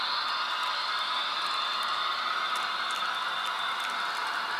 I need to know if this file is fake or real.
real